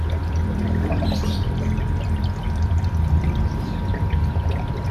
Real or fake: fake